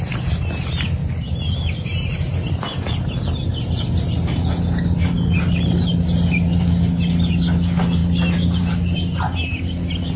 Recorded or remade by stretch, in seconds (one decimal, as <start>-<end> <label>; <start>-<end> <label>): 0.0-10.2 recorded